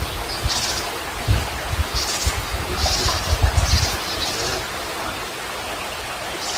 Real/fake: real